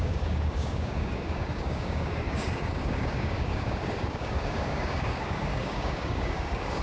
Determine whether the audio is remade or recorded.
remade